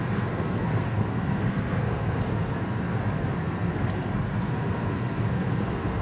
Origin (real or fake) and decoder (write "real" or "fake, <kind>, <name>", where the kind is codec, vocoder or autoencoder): fake, codec, SNAC